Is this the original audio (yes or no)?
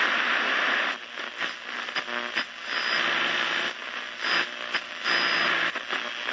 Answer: yes